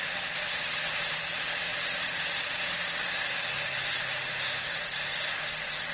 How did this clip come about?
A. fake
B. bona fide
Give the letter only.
B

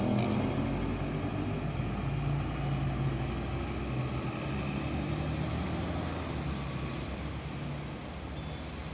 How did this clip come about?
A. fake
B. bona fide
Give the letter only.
B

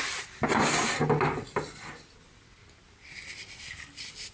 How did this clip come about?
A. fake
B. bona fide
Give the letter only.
B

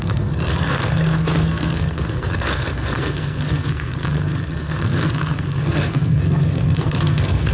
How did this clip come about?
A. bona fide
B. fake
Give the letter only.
B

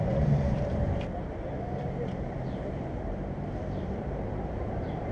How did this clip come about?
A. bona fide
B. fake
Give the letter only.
B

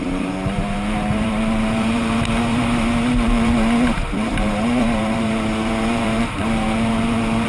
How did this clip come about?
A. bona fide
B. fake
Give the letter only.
B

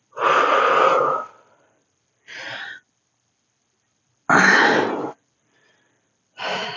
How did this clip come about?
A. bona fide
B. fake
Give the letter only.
A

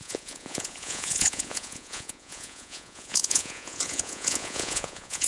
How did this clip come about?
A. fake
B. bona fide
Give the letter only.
A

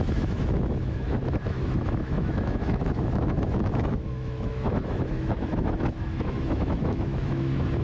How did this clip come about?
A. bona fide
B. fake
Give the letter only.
B